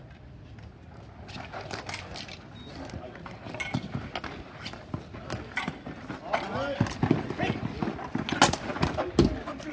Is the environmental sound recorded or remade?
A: recorded